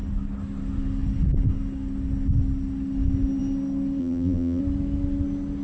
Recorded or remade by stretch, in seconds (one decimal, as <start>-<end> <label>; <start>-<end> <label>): 0.0-4.0 recorded; 4.0-4.6 remade; 4.6-5.6 recorded